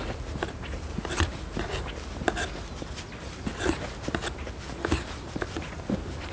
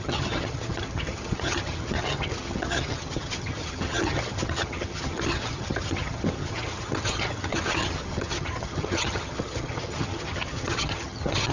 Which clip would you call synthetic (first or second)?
second